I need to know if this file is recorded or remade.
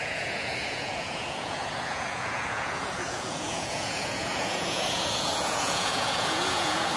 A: remade